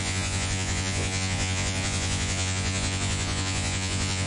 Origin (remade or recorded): remade